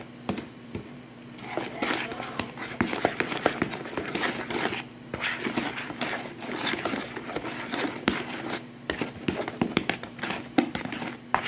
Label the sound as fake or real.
fake